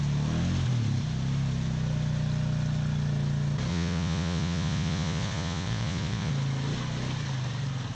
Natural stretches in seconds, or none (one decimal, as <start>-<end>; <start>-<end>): 0.0-3.7; 6.3-7.9